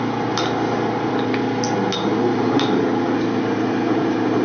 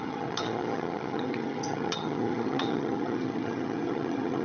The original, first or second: first